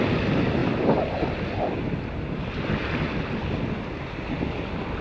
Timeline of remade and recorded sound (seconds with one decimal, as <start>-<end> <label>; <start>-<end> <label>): 0.0-5.0 recorded